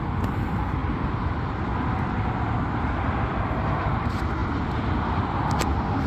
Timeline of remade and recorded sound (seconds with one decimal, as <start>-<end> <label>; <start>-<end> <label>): 0.0-6.1 recorded